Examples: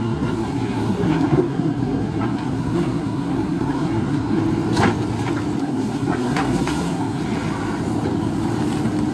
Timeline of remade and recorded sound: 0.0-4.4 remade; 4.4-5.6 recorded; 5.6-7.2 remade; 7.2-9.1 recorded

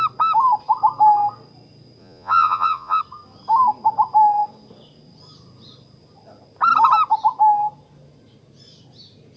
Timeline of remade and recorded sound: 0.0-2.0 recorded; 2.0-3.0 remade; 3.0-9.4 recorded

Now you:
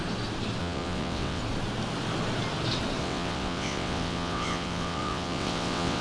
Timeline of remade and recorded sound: 0.0-0.6 recorded; 0.6-1.4 remade; 1.4-3.0 recorded; 3.0-6.0 remade

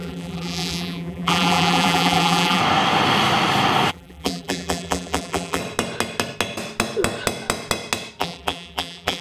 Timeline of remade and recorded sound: 0.0-2.6 remade; 2.6-3.9 recorded; 3.9-5.6 remade; 5.6-8.2 recorded; 8.2-9.2 remade